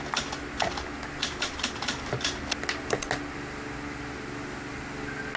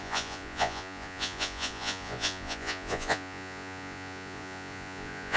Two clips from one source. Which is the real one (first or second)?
first